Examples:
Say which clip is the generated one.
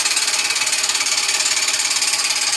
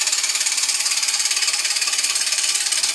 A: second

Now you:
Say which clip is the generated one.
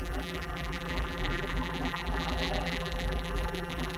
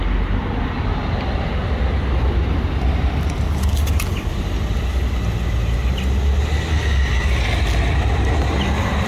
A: first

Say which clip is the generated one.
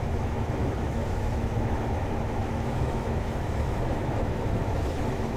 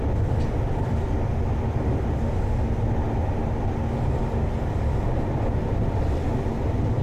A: first